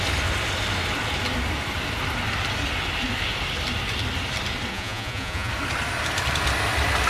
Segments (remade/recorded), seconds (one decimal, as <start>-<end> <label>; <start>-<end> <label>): 0.0-4.7 recorded; 4.7-5.5 remade; 5.5-7.1 recorded